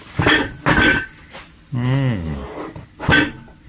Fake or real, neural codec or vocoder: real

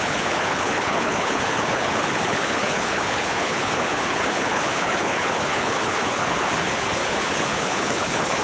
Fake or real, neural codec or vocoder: fake, codec, HILCodec